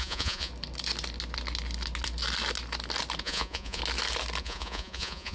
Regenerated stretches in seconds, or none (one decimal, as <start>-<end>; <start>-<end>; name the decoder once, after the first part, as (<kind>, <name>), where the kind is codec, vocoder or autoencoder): 0.0-0.5 (vocoder, Vocos); 3.2-3.8; 4.4-5.3